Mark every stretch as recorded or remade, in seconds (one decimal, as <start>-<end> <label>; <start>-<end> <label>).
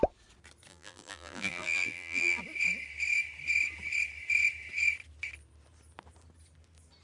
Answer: 0.0-0.7 recorded; 0.7-2.4 remade; 2.4-7.0 recorded